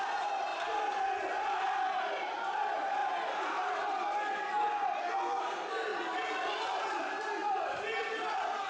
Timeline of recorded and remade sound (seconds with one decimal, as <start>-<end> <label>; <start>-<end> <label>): 0.0-0.5 recorded; 0.5-2.0 remade; 2.0-5.9 recorded; 5.9-6.7 remade; 6.7-7.4 recorded; 7.4-8.7 remade